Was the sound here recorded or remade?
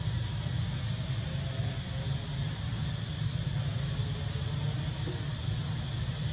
recorded